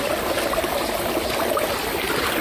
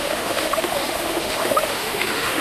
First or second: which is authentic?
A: first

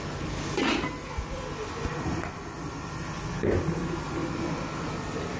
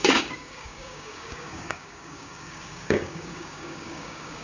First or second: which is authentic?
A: first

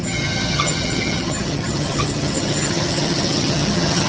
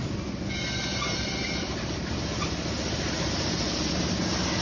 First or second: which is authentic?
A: second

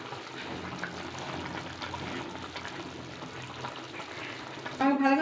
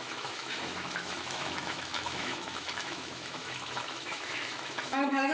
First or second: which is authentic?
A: first